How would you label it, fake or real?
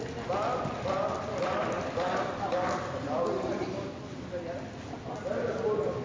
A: real